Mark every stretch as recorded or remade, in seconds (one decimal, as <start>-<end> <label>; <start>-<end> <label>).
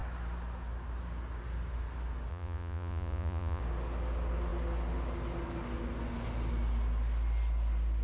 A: 0.0-2.3 recorded; 2.3-3.6 remade; 3.6-8.0 recorded